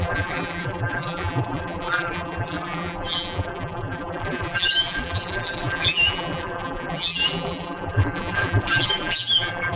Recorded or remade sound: remade